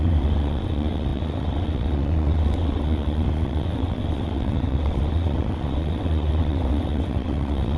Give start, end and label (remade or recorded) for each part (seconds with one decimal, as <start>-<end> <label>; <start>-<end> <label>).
0.0-7.8 remade